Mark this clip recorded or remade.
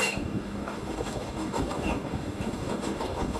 remade